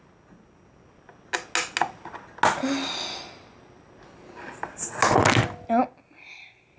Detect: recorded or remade recorded